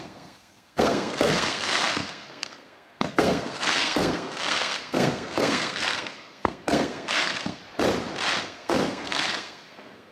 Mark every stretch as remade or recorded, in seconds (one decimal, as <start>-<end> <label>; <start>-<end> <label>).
0.0-7.6 remade; 7.6-8.4 recorded; 8.4-10.1 remade